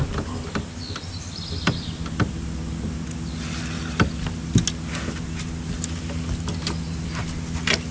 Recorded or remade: recorded